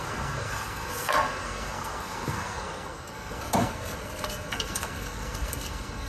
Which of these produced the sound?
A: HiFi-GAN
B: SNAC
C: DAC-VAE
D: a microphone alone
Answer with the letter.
B